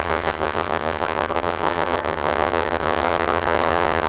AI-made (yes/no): yes